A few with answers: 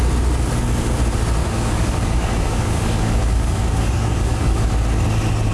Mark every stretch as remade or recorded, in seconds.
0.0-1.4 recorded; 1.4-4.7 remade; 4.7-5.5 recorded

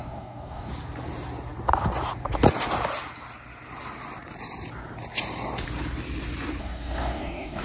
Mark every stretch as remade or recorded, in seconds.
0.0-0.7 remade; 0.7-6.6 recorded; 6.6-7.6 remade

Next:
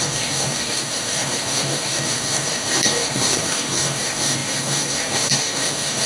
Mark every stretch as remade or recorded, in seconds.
0.0-6.1 remade

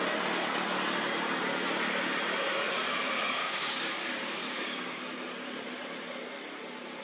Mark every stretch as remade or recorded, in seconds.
0.0-3.4 recorded; 3.4-5.0 remade; 5.0-7.0 recorded

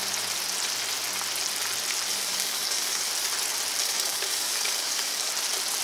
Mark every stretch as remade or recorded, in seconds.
0.0-2.1 recorded; 2.1-3.1 remade; 3.1-3.8 recorded; 3.8-5.3 remade; 5.3-5.8 recorded

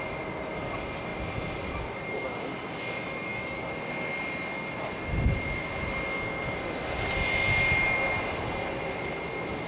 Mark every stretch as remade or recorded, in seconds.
0.0-9.7 recorded

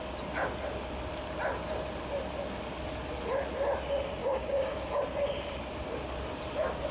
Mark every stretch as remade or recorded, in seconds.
0.0-4.2 recorded; 4.2-5.0 remade; 5.0-6.9 recorded